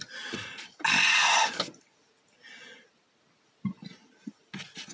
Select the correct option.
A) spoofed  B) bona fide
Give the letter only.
B